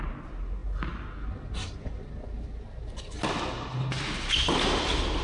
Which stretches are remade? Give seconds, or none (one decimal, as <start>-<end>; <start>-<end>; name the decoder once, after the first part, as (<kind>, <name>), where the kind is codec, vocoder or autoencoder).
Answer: none